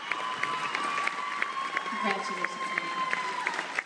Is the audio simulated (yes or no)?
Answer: no